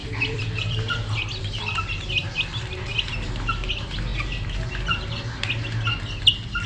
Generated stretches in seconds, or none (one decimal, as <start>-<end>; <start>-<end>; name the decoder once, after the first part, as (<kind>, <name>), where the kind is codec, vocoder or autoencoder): 0.0-1.6 (vocoder, BigVGAN v2)